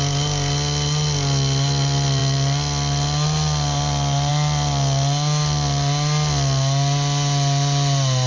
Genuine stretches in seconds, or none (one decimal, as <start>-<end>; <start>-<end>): 0.0-8.3